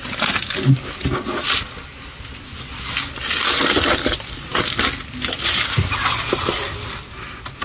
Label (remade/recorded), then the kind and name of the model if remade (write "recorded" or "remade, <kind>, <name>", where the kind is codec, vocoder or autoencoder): recorded